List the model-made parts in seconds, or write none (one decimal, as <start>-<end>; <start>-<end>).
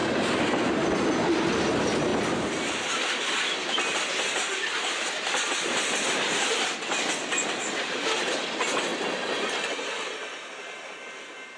0.0-0.7; 2.1-3.3